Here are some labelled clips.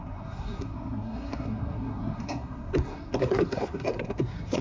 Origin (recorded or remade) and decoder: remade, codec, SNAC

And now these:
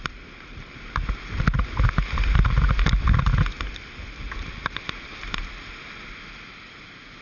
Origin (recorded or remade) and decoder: recorded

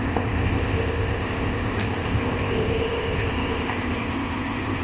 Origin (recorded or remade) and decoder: remade, codec, ZipCodec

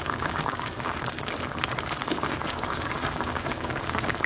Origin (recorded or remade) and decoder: remade, codec, DAC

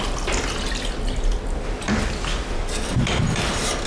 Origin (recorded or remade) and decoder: recorded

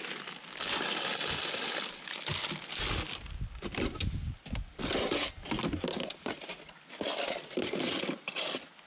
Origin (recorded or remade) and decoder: recorded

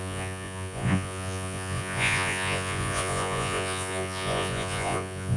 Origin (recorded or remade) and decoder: remade, vocoder, Vocos